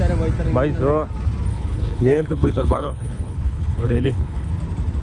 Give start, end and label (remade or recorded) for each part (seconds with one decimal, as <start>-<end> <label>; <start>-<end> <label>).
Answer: 0.0-1.5 recorded; 1.5-4.5 remade; 4.5-5.0 recorded